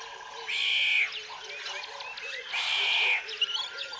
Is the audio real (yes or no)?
yes